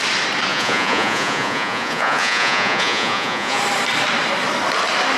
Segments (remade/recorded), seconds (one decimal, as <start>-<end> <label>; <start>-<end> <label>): 0.0-0.5 recorded; 0.5-3.6 remade; 3.6-5.2 recorded